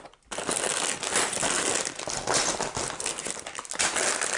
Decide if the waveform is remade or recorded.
recorded